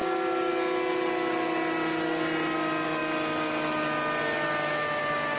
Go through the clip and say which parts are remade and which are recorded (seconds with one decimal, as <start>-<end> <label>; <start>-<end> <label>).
0.0-5.4 recorded